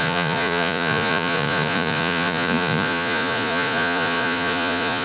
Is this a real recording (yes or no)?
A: no